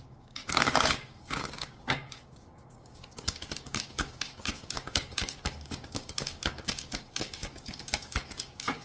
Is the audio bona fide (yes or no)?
no